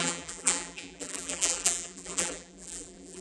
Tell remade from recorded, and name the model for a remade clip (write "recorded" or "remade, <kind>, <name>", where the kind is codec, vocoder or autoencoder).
remade, vocoder, BigVGAN v2